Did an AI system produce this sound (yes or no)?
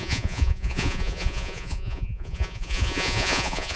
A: yes